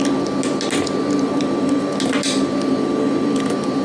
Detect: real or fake real